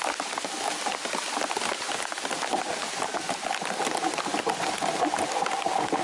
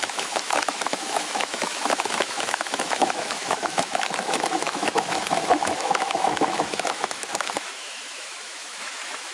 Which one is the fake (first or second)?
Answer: second